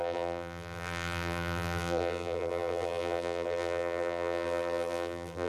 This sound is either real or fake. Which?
fake